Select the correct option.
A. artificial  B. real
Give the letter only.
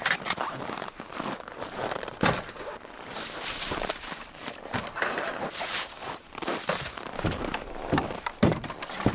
A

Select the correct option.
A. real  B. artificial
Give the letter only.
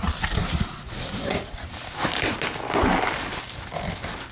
A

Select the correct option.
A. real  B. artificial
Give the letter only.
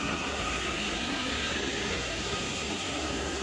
B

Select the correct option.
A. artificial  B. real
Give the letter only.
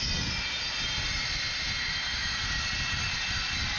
B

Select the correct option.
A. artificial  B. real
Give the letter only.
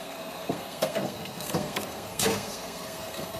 A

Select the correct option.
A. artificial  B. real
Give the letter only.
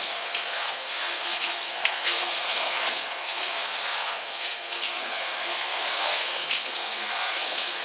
A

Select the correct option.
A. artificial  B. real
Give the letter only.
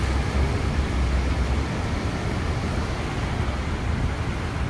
B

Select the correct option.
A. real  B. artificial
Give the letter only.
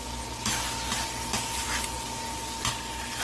A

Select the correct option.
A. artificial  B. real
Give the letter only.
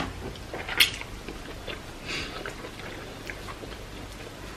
B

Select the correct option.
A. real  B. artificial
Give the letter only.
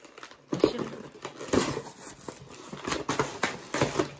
A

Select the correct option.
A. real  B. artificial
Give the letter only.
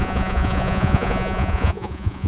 B